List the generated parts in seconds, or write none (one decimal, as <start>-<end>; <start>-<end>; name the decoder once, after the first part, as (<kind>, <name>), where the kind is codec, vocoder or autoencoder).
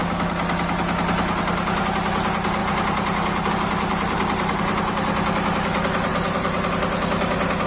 2.6-3.5 (vocoder, BigVGAN v2); 3.9-4.6; 6.1-6.7